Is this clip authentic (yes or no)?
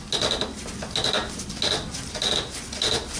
yes